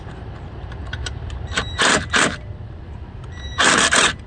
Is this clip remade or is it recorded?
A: remade